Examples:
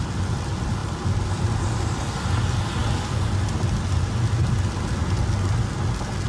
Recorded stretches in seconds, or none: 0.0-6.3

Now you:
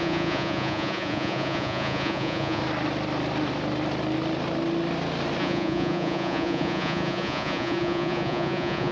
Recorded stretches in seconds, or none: 2.6-5.4

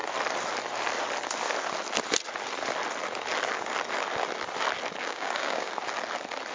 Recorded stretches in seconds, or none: 0.0-5.0; 5.7-6.5

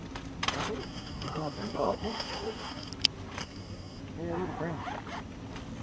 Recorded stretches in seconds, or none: 0.0-0.8; 2.9-3.4; 4.0-5.8